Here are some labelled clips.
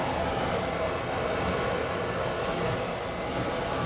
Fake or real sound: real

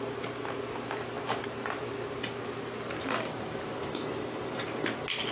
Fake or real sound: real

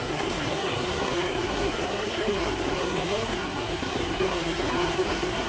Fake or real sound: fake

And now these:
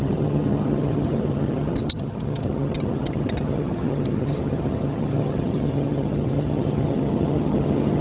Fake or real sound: fake